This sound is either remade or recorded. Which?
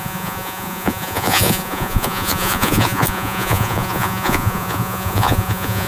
remade